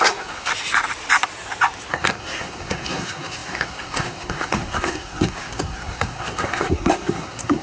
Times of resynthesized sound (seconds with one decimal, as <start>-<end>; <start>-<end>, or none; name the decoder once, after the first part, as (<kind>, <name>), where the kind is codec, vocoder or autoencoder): 0.0-0.5 (codec, SNAC); 1.9-7.6